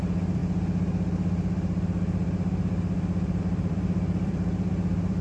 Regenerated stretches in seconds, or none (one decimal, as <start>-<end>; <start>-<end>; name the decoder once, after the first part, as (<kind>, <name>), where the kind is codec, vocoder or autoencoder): 0.0-0.4 (vocoder, BigVGAN v2); 3.4-5.2